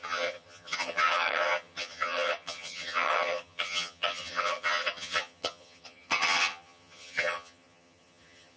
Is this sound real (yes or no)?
no